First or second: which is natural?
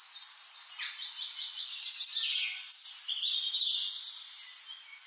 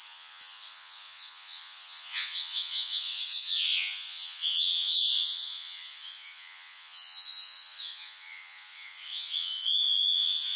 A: first